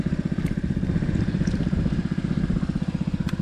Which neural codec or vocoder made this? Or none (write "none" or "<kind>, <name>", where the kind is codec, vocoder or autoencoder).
none